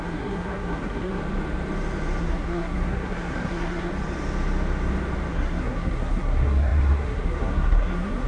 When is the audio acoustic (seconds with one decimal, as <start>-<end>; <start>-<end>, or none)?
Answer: 1.2-2.2; 3.9-5.3